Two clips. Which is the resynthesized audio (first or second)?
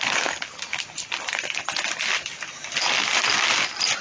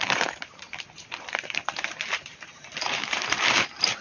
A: second